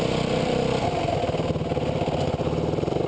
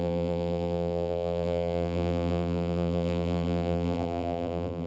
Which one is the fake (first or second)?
second